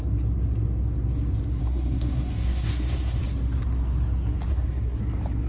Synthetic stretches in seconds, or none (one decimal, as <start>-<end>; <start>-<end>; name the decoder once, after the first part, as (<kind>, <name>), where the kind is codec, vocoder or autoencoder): 1.6-3.2 (codec, SNAC); 4.5-5.0